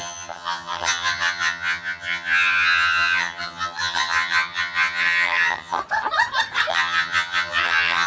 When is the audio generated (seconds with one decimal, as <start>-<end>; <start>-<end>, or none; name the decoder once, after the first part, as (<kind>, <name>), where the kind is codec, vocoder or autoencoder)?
0.0-5.8 (vocoder, HiFi-GAN); 6.7-8.1